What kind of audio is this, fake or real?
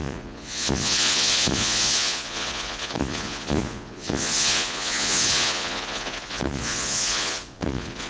fake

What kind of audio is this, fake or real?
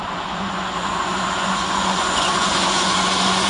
fake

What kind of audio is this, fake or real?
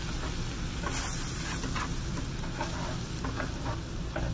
real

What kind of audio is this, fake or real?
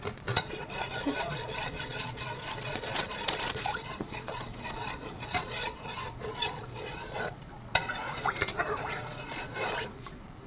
fake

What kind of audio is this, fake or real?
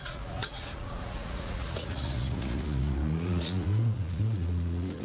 fake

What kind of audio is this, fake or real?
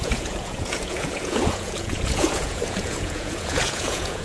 fake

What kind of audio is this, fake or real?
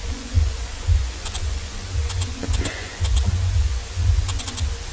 fake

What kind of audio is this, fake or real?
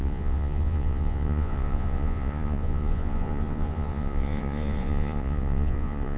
fake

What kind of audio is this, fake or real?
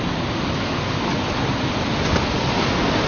real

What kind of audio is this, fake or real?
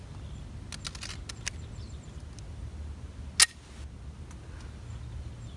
real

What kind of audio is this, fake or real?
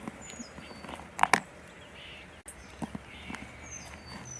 real